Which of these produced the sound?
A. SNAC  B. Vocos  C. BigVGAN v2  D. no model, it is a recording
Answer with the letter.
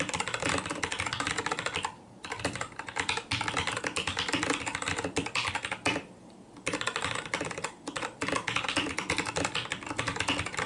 D